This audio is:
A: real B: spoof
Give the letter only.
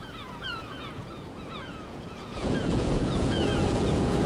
B